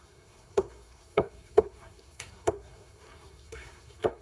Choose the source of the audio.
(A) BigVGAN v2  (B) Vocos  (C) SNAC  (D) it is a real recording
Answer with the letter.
C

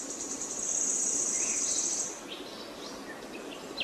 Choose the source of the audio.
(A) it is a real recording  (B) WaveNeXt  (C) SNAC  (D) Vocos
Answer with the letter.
A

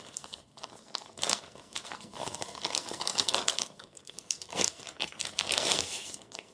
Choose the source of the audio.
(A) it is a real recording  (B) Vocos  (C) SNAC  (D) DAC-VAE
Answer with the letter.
C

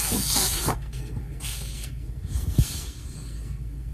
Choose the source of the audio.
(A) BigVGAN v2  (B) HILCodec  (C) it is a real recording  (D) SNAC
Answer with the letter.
D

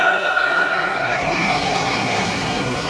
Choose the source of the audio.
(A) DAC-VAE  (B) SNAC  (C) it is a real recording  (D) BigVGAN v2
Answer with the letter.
B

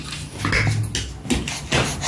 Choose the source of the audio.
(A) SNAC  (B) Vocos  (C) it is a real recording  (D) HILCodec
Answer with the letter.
C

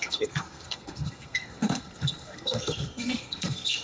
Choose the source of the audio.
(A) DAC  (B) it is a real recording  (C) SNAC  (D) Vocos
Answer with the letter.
C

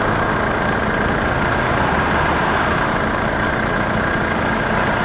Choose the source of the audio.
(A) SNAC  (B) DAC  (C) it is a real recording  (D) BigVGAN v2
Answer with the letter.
C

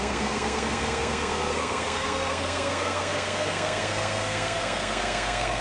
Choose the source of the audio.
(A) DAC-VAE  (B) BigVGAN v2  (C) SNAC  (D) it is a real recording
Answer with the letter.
C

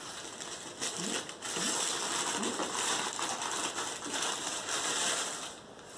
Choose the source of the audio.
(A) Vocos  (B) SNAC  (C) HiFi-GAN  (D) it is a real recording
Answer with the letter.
D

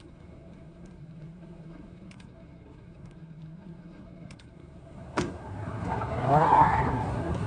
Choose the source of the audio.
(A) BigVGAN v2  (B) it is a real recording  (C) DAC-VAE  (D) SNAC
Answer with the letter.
D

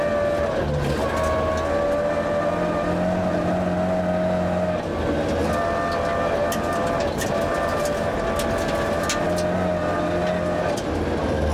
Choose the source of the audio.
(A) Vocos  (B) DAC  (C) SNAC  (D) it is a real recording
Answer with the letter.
D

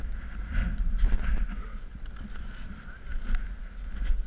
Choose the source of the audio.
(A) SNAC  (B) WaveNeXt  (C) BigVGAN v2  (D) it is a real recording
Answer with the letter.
D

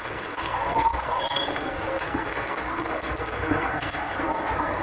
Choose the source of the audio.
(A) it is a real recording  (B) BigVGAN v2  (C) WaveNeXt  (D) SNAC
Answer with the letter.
D